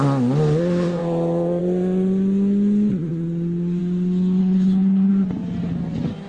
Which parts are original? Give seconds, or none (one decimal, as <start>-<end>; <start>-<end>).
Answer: 0.0-4.4; 5.1-6.3